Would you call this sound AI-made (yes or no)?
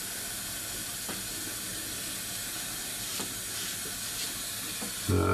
no